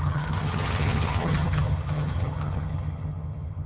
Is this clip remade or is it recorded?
remade